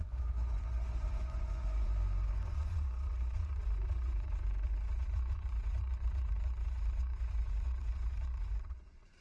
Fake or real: fake